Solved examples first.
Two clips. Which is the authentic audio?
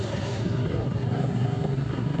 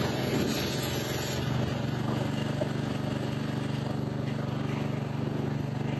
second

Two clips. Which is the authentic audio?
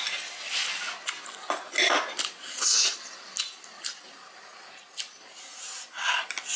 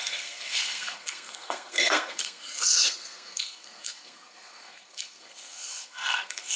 first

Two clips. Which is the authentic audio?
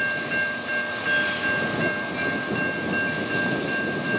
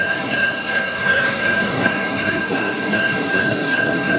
first